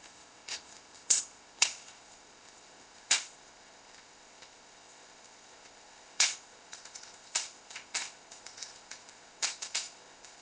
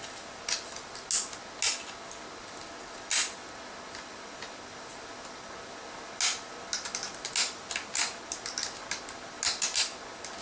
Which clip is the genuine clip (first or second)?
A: second